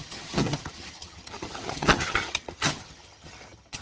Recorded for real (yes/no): no